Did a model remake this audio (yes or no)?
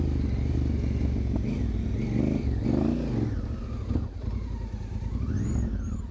no